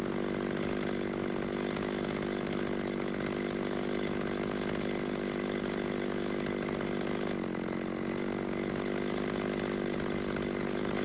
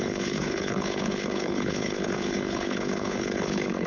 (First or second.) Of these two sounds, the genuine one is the first